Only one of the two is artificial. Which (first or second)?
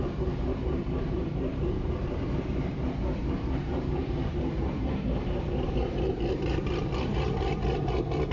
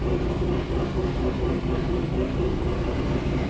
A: first